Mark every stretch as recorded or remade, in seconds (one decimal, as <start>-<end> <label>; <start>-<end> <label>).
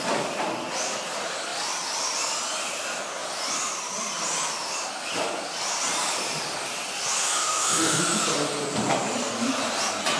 0.0-7.2 recorded; 7.2-8.0 remade; 8.0-10.2 recorded